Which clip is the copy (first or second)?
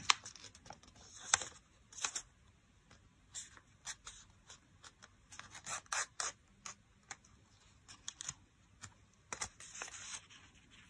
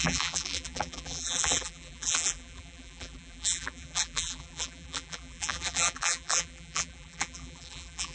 second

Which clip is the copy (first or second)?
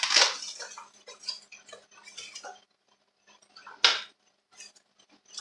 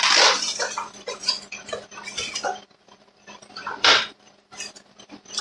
second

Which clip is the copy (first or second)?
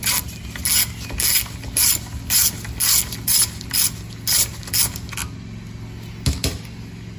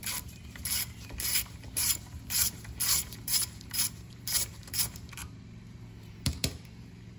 second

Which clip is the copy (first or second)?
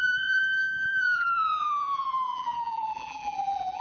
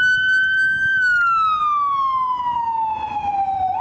first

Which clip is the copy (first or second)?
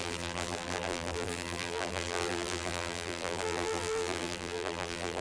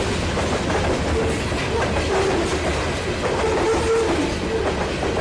first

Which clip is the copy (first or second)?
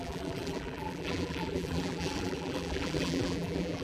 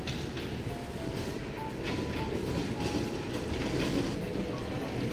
first